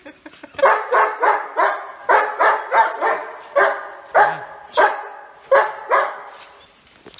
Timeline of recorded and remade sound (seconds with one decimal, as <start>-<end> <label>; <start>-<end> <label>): 0.0-7.2 recorded